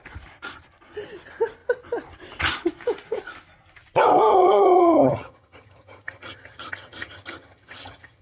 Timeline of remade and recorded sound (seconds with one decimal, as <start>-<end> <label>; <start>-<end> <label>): 0.0-4.3 recorded; 4.3-8.2 remade